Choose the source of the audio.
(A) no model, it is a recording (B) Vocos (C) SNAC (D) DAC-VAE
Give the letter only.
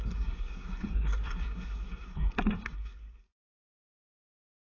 C